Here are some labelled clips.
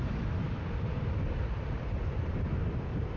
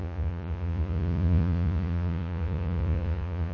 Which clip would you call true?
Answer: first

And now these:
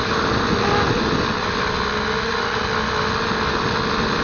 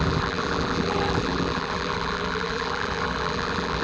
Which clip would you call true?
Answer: first